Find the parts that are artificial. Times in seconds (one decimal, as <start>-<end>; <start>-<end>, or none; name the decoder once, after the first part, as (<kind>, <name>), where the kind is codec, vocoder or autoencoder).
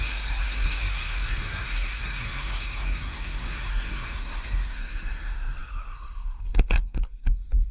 0.0-7.7 (codec, SNAC)